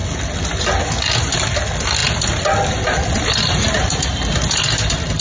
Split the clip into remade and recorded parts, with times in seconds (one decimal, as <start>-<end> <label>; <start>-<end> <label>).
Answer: 0.0-5.2 recorded

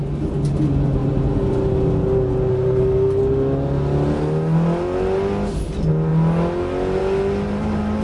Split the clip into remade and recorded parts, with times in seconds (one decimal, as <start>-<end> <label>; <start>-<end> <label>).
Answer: 0.0-2.5 recorded; 2.5-3.2 remade; 3.2-8.0 recorded

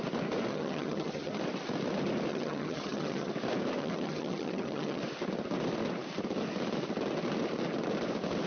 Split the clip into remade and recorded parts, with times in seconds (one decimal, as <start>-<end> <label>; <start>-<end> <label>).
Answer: 0.0-0.5 recorded; 0.5-1.4 remade; 1.4-2.3 recorded; 2.3-3.3 remade; 3.3-3.8 recorded; 3.8-5.0 remade; 5.0-8.5 recorded

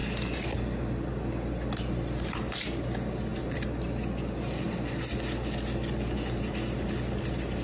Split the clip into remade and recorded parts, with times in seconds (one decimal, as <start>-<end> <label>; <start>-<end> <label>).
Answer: 0.0-7.6 recorded

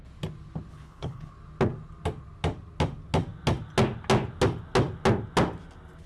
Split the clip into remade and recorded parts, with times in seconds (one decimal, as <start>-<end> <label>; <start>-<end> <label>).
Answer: 0.0-0.7 recorded; 0.7-1.3 remade; 1.3-6.1 recorded